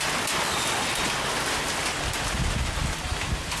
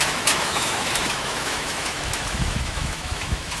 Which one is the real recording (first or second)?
first